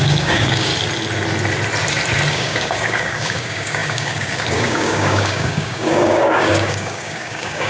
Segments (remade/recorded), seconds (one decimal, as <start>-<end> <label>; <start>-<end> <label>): 0.0-0.7 remade; 0.7-2.3 recorded; 2.3-7.7 remade